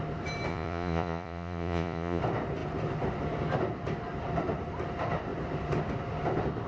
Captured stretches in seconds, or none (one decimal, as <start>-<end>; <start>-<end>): 0.0-0.5; 2.2-6.7